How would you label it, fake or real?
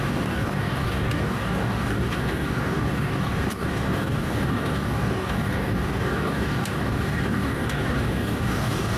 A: fake